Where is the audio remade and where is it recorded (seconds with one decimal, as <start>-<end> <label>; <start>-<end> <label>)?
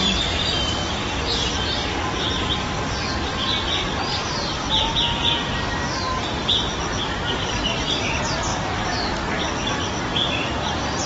0.0-0.8 remade; 0.8-2.2 recorded; 2.2-8.5 remade; 8.5-10.0 recorded; 10.0-11.1 remade